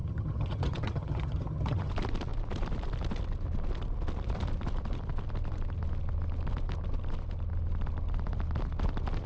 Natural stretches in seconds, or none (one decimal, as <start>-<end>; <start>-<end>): 1.9-9.3